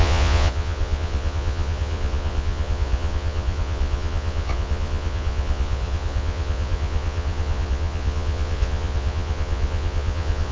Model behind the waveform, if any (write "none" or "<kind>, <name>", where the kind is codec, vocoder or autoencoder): vocoder, Vocos